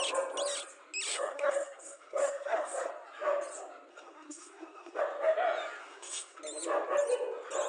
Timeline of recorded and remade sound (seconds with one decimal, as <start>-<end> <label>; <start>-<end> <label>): 0.0-1.1 recorded; 1.1-2.9 remade; 2.9-3.9 recorded; 3.9-5.0 remade; 5.0-5.8 recorded; 5.8-6.4 remade; 6.4-7.7 recorded